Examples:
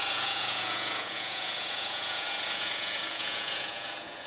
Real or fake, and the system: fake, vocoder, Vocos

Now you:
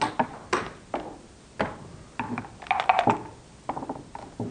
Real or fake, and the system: real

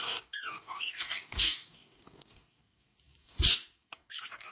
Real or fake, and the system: fake, codec, DAC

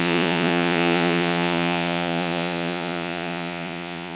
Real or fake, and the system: fake, vocoder, Vocos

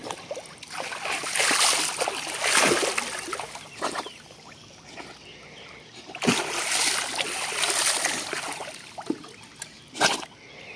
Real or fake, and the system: real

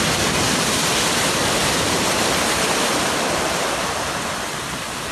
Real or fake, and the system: real